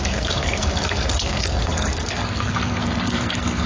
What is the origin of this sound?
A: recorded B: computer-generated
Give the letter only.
B